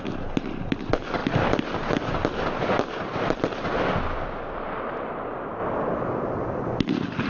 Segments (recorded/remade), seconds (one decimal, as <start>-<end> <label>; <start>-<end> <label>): 0.0-1.2 recorded; 1.2-5.1 remade; 5.1-5.6 recorded; 5.6-6.8 remade; 6.8-7.3 recorded

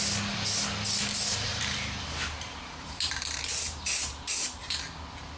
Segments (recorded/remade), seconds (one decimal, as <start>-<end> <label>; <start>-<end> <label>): 0.0-1.5 recorded; 1.5-4.7 remade; 4.7-5.4 recorded

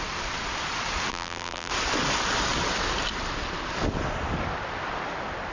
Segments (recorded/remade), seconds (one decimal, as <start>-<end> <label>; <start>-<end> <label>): 0.0-1.1 recorded; 1.1-1.7 remade; 1.7-5.5 recorded

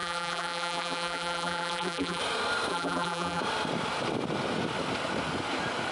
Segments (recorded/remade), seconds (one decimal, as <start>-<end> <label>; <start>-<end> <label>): 0.0-2.2 remade; 2.2-2.7 recorded; 2.7-3.4 remade; 3.4-5.9 recorded